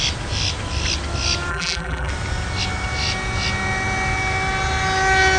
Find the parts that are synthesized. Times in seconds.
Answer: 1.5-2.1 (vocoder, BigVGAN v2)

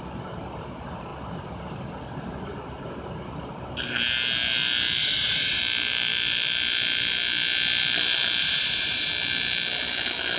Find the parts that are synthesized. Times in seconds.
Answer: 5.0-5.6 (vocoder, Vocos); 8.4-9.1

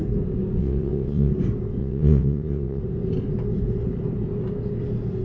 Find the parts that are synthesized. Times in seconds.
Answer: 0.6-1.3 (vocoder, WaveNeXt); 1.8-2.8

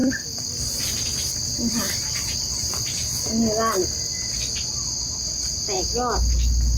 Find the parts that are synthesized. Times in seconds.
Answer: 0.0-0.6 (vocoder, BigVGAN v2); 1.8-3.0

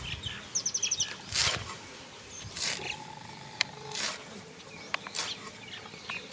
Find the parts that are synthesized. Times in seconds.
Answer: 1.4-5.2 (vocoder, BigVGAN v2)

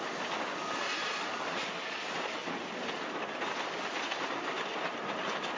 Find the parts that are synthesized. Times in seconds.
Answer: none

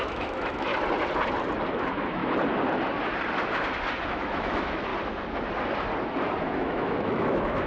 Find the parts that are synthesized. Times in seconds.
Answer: 0.0-0.7 (autoencoder, DAC-VAE); 1.7-2.2; 4.0-4.9; 6.4-7.7

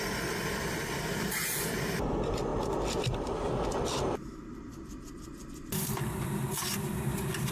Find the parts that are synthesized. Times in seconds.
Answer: none